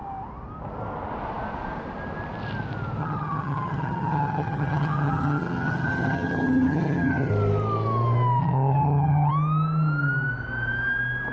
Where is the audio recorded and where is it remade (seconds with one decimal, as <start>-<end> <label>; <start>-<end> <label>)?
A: 0.0-3.0 recorded; 3.0-7.3 remade; 7.3-8.4 recorded; 8.4-9.3 remade; 9.3-11.3 recorded